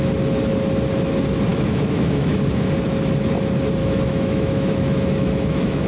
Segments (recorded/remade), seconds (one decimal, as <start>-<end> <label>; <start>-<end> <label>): 0.0-1.5 recorded; 1.5-2.3 remade; 2.3-3.8 recorded; 3.8-5.9 remade